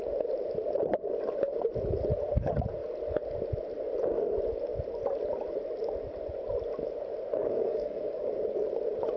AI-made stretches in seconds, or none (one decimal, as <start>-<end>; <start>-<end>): 7.4-8.3